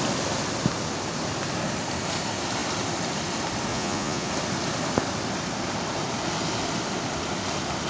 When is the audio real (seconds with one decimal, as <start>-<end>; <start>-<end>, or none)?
0.0-3.7; 4.3-7.9